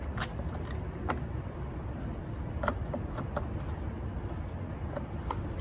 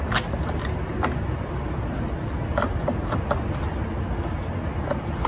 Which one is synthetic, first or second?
first